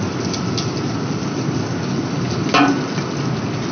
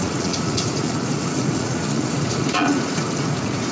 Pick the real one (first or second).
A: first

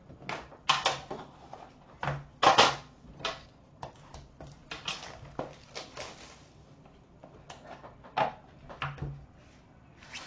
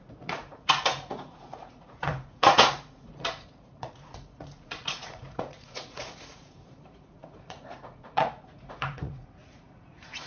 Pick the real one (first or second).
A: first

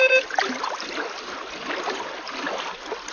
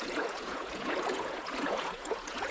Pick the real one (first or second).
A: first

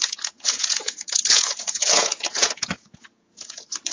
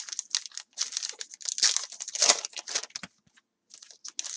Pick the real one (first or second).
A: second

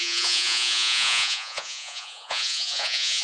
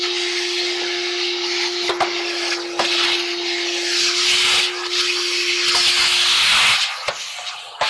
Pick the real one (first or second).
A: second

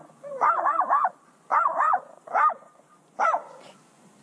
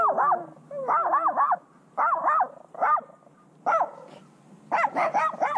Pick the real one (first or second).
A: second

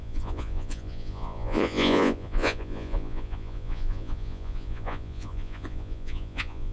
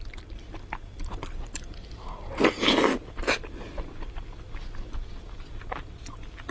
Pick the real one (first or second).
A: second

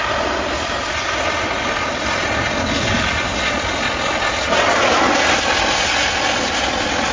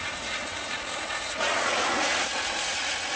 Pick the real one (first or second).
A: first